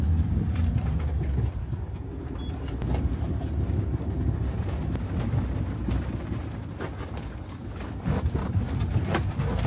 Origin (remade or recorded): recorded